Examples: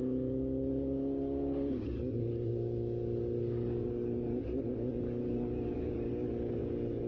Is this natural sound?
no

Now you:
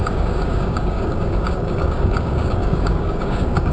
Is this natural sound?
no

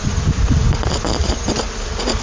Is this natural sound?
yes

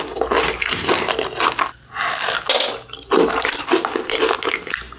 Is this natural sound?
yes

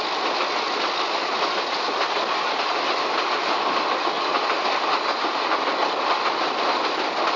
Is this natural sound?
yes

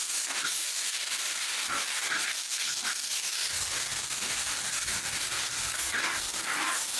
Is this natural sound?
no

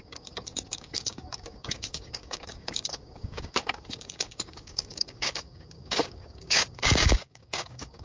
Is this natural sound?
no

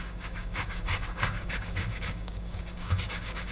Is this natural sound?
no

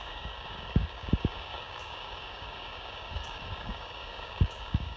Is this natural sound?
no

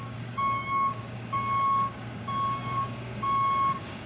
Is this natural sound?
no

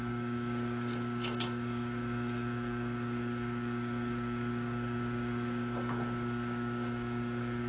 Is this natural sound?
no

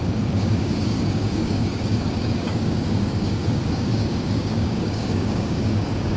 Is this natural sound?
no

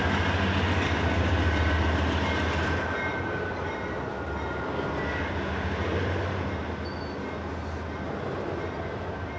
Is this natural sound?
yes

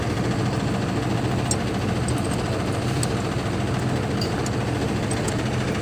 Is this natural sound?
yes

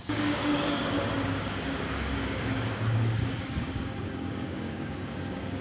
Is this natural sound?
no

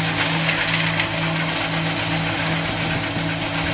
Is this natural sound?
yes